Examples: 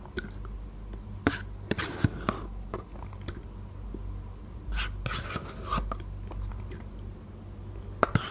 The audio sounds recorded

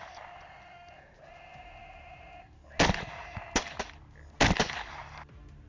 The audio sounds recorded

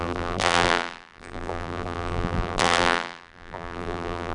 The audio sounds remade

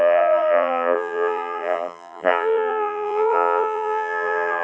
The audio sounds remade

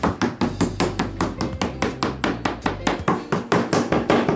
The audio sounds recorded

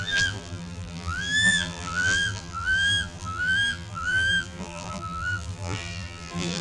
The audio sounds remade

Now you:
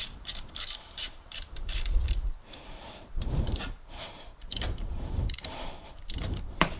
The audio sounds remade